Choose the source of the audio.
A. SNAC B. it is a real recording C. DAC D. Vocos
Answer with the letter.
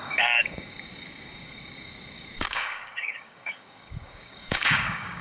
C